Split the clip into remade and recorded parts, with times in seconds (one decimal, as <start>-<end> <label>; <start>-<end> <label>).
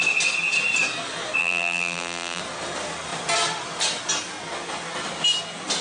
0.0-1.4 recorded; 1.4-2.4 remade; 2.4-5.8 recorded